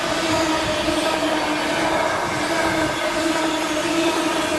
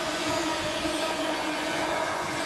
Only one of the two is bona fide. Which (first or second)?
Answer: first